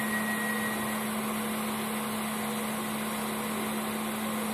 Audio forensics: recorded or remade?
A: recorded